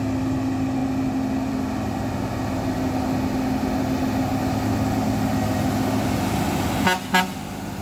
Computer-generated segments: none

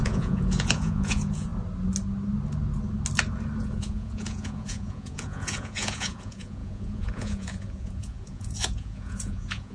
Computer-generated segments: 0.0-1.5 (vocoder, Vocos); 3.6-9.7

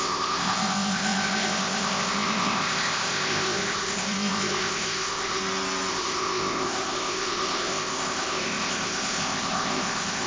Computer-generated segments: 0.0-5.4 (codec, ZipCodec); 5.9-10.3

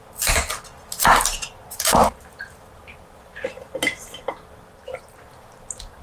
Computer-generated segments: 1.6-2.2 (vocoder, BigVGAN v2); 2.8-4.3